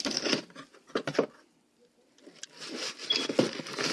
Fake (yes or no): no